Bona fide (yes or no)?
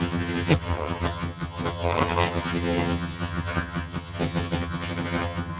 no